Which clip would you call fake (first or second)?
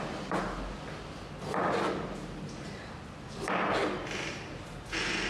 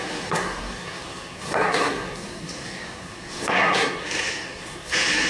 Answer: second